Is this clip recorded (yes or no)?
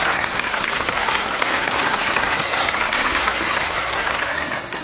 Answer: no